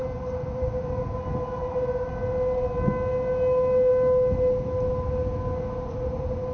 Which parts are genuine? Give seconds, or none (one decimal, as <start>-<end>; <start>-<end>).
0.0-6.5